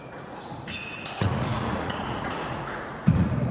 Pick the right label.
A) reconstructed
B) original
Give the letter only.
A